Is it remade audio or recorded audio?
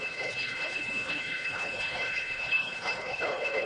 remade